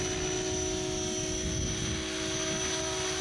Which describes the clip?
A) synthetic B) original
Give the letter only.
B